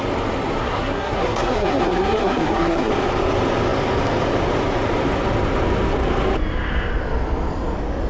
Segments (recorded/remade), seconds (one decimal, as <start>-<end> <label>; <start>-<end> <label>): 0.0-0.6 recorded; 0.6-2.9 remade; 2.9-8.1 recorded